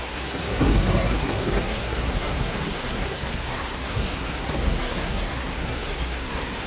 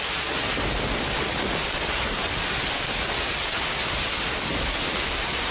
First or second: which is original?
second